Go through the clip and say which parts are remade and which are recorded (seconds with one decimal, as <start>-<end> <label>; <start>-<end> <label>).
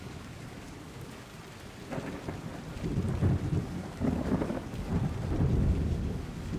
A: 0.0-1.3 remade; 1.3-3.6 recorded; 3.6-4.9 remade; 4.9-5.6 recorded; 5.6-6.6 remade